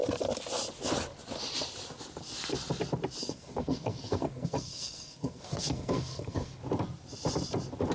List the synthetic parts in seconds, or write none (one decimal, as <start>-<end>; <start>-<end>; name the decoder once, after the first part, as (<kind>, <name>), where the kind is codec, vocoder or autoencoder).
3.2-6.6 (codec, SNAC)